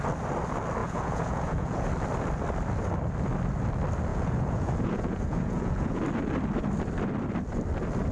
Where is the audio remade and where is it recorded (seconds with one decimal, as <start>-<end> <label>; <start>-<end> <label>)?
0.0-0.8 recorded; 0.8-1.9 remade; 1.9-4.1 recorded; 4.1-6.0 remade; 6.0-8.1 recorded